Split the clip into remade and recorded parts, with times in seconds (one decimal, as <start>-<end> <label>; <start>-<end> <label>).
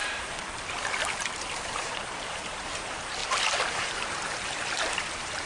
0.0-3.2 remade; 3.2-3.7 recorded; 3.7-5.5 remade